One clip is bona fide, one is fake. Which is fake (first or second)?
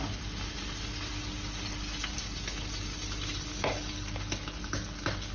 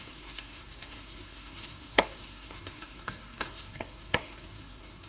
second